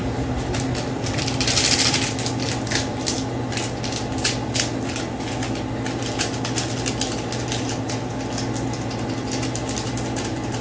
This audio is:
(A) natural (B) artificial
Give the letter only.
A